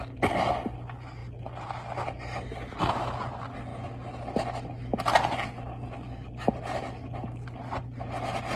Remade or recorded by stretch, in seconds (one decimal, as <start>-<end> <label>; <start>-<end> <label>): 0.0-8.6 recorded

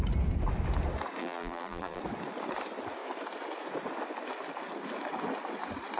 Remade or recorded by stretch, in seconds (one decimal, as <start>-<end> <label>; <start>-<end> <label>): 0.0-1.2 recorded; 1.2-2.0 remade; 2.0-6.0 recorded